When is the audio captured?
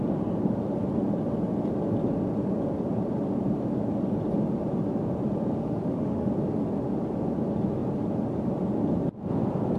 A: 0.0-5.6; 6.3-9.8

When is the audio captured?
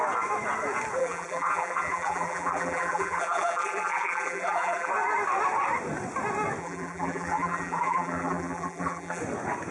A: 0.0-1.0; 4.9-6.6; 9.2-9.7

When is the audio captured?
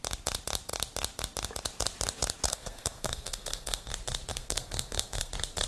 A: 0.0-2.5; 3.9-4.3; 5.3-5.7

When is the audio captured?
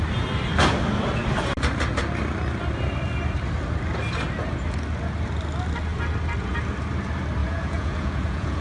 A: 0.0-7.4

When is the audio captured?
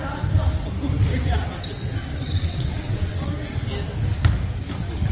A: 0.0-2.1; 3.3-5.1